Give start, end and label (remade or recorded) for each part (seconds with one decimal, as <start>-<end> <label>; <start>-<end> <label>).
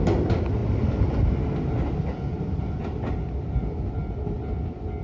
0.0-5.0 recorded